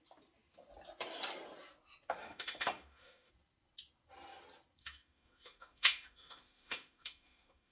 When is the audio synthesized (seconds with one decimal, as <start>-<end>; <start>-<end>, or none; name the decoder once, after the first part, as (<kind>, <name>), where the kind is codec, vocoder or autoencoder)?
2.2-3.3 (autoencoder, DAC-VAE); 4.8-7.7